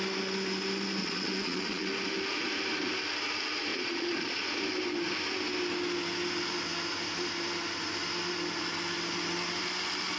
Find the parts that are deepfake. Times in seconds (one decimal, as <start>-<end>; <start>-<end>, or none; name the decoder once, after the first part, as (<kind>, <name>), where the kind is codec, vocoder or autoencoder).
1.0-1.9 (vocoder, Vocos); 3.7-4.5